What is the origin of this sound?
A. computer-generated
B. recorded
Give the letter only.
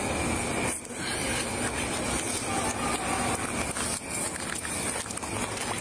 B